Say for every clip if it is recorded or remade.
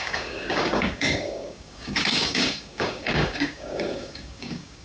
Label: remade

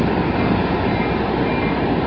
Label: recorded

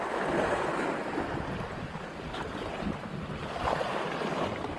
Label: recorded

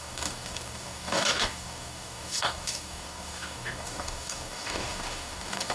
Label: remade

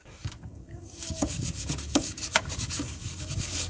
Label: remade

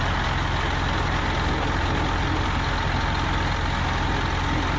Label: recorded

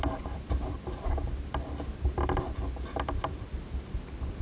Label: recorded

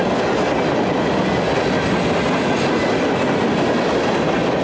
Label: recorded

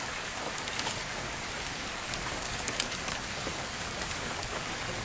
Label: remade